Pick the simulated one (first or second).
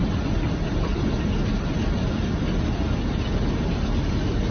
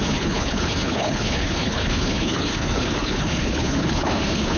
second